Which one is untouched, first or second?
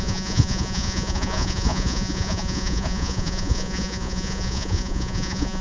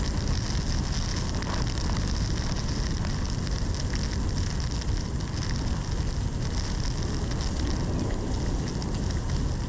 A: second